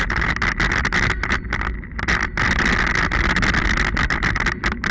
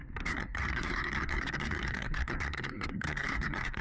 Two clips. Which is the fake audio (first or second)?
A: second